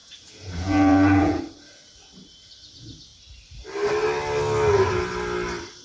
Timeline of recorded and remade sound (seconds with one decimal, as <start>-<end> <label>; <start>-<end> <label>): 0.0-1.4 remade; 1.4-5.8 recorded